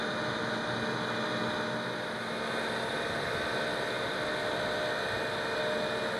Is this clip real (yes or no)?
yes